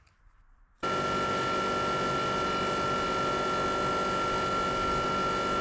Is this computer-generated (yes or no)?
no